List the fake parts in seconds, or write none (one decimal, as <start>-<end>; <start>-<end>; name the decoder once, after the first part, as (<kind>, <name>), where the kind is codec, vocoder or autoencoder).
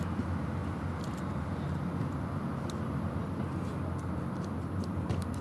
none